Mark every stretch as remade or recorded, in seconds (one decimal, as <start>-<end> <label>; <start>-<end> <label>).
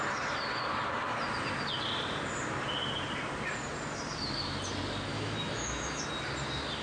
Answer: 0.0-5.1 recorded; 5.1-6.0 remade; 6.0-6.8 recorded